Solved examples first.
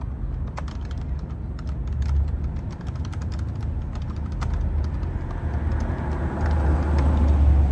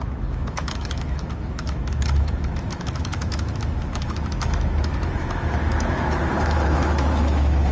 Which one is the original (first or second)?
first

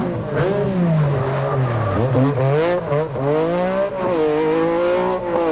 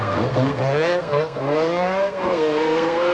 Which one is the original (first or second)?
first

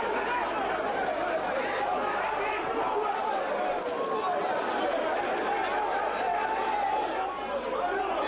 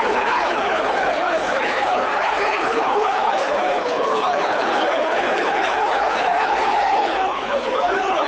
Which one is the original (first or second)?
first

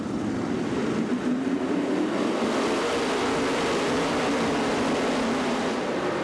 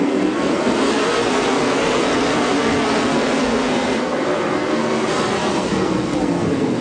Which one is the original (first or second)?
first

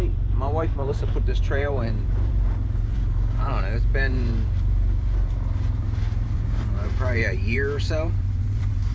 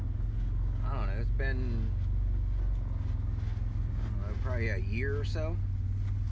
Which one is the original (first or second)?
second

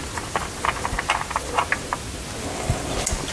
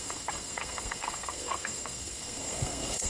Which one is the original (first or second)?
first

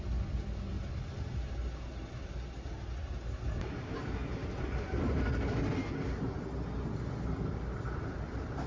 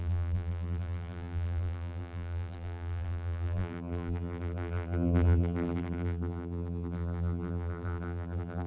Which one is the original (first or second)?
first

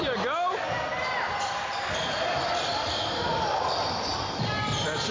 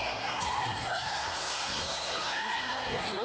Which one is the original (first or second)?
first